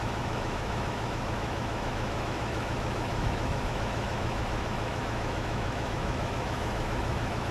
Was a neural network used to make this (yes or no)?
yes